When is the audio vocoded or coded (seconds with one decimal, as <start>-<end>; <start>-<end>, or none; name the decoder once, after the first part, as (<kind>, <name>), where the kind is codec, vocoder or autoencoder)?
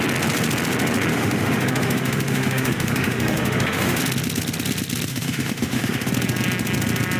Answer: 1.1-4.0 (autoencoder, DAC-VAE); 5.1-6.1